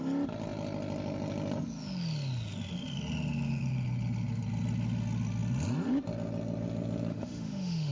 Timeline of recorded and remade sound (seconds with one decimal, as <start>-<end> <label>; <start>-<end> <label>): 0.0-7.1 recorded; 7.1-7.9 remade